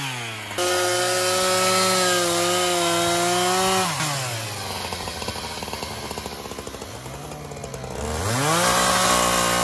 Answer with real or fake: real